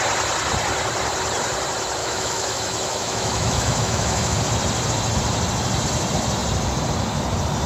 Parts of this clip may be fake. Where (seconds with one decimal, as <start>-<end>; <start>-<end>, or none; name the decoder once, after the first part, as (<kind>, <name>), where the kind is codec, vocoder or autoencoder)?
2.0-4.4 (autoencoder, DAC-VAE)